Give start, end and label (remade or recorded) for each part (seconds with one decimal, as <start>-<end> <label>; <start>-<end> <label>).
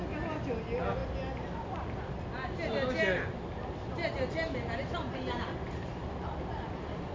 0.0-7.1 recorded